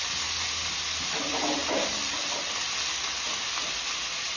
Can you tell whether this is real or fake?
real